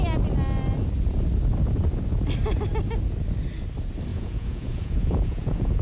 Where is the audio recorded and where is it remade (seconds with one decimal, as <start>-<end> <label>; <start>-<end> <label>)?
0.0-4.1 recorded; 4.1-5.8 remade